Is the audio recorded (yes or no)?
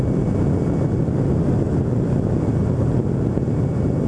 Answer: yes